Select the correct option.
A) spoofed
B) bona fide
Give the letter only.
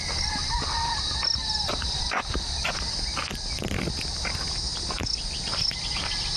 B